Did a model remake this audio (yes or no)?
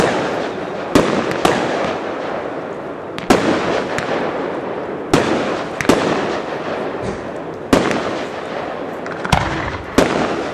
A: no